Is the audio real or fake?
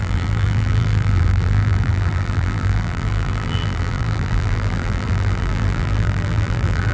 fake